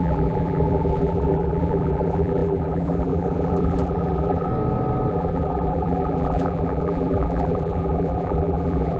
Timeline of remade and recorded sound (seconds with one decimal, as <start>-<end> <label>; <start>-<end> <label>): 0.0-4.5 remade; 4.5-5.1 recorded; 5.1-9.0 remade